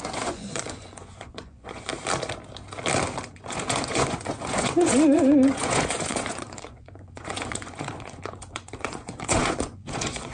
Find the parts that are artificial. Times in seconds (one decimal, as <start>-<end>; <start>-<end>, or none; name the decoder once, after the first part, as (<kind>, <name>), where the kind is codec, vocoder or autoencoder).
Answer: 0.0-1.9 (vocoder, Vocos); 3.3-10.3